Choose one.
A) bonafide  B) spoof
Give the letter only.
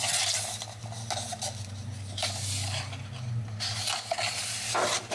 A